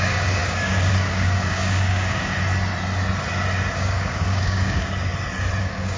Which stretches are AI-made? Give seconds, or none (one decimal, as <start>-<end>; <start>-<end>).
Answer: 0.0-2.3; 3.7-5.1; 5.6-6.0